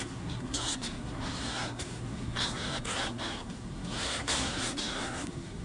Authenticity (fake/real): fake